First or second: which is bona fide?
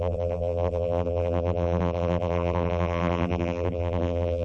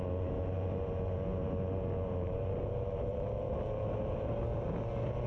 second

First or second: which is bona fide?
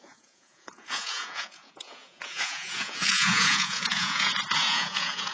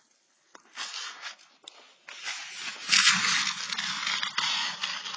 second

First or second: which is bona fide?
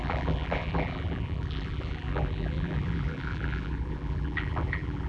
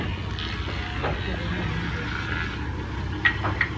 second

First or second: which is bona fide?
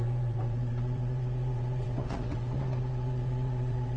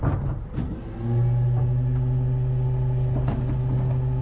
second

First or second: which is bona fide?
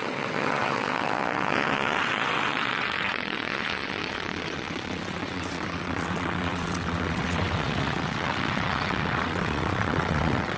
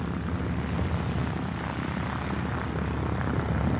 second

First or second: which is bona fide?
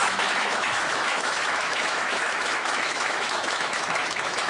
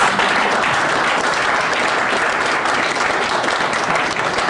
second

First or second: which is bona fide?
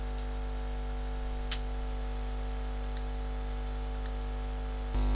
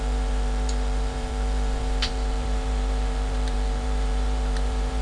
first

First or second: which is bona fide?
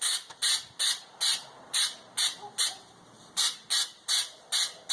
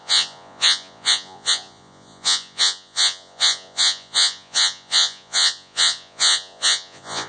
first